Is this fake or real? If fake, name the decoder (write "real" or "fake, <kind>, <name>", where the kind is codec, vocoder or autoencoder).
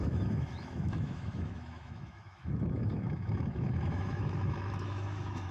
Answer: fake, autoencoder, DAC-VAE